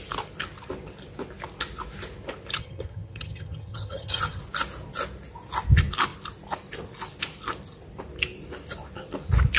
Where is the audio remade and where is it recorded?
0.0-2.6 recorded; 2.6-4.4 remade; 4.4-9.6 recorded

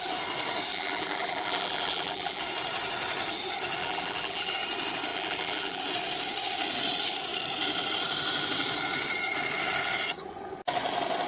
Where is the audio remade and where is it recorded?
0.0-0.7 recorded; 0.7-2.4 remade; 2.4-3.8 recorded; 3.8-4.5 remade; 4.5-5.1 recorded; 5.1-5.8 remade; 5.8-11.3 recorded

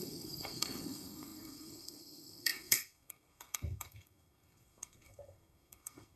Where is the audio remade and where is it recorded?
0.0-6.2 remade

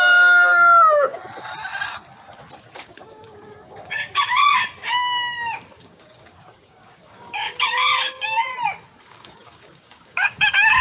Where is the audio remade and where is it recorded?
0.0-1.2 remade; 1.2-2.6 recorded; 2.6-8.4 remade; 8.4-9.0 recorded; 9.0-10.8 remade

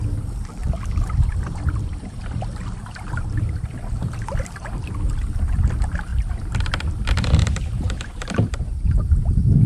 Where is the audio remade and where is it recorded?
0.0-0.6 recorded; 0.6-5.1 remade; 5.1-6.1 recorded; 6.1-9.0 remade; 9.0-9.7 recorded

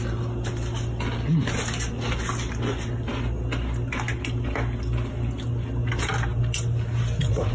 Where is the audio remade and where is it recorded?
0.0-7.5 recorded